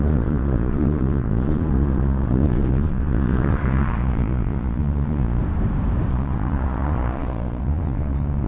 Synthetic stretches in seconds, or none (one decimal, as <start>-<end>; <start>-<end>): 0.0-5.4; 6.1-8.5